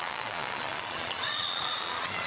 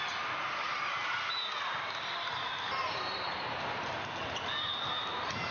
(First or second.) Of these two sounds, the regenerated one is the first